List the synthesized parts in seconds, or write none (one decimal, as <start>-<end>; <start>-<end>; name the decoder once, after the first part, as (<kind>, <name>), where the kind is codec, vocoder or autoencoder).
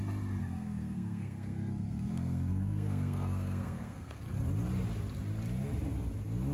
0.4-4.2 (codec, SNAC)